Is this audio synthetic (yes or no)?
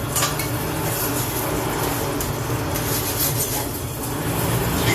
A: no